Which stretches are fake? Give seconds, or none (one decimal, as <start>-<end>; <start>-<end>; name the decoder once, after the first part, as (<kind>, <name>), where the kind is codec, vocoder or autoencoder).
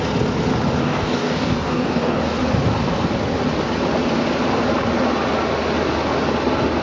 0.8-2.2 (codec, DAC)